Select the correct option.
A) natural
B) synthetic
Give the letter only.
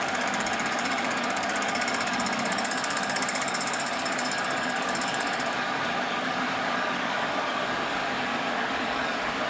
B